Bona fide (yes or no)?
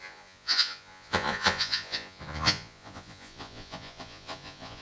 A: no